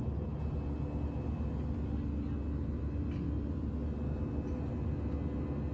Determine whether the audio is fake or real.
real